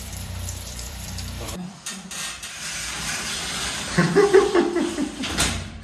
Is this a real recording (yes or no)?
no